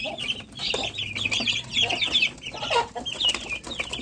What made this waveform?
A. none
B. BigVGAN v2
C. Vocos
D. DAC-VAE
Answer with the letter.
A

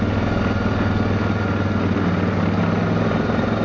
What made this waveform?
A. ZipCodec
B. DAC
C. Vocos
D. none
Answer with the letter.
D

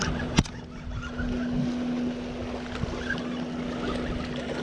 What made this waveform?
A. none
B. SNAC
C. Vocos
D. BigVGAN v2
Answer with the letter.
A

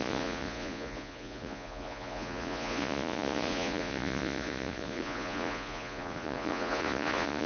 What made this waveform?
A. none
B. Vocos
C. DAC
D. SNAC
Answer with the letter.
B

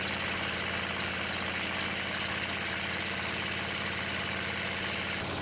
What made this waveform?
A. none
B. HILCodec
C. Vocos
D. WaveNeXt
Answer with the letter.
A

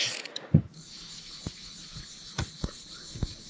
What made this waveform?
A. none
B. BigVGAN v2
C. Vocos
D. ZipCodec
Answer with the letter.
C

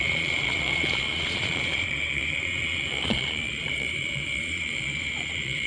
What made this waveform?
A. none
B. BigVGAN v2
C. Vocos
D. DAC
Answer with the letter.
C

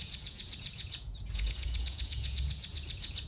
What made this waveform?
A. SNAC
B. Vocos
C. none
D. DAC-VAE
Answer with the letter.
B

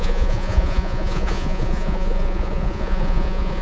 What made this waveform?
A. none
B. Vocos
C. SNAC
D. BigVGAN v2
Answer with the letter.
B